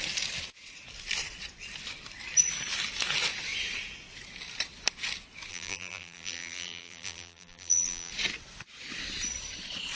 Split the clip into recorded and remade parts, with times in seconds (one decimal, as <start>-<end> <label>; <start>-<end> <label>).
0.0-5.5 recorded; 5.5-8.1 remade; 8.1-10.0 recorded